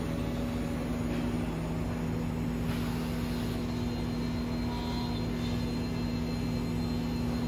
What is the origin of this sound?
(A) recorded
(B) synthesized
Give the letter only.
A